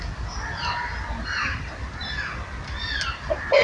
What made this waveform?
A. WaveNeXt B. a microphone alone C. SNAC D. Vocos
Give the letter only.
B